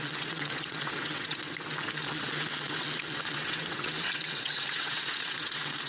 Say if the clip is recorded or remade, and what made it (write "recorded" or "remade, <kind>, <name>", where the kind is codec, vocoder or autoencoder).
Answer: remade, vocoder, WaveNeXt